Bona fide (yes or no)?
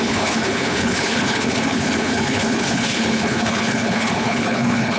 no